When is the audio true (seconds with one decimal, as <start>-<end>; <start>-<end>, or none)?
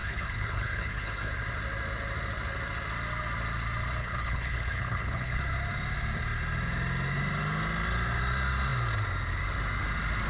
1.3-4.0; 5.4-10.3